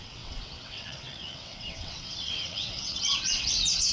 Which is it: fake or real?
fake